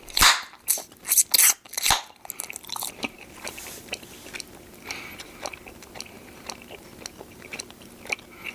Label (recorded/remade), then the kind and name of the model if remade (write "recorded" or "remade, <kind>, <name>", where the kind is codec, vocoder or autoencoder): recorded